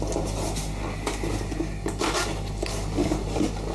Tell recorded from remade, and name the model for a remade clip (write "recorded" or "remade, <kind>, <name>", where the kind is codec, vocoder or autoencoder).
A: recorded